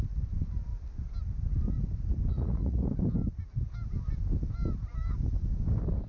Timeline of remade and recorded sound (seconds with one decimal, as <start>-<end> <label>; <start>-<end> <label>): 0.0-2.3 recorded; 2.3-2.9 remade; 2.9-6.1 recorded